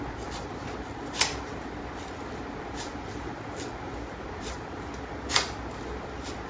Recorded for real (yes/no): yes